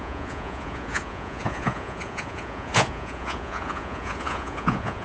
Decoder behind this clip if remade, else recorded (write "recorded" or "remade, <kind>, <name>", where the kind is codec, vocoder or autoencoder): remade, vocoder, Vocos